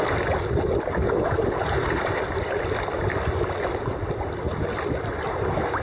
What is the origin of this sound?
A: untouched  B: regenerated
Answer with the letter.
A